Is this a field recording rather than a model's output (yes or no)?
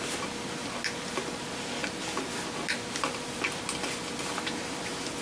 yes